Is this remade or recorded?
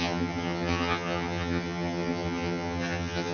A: remade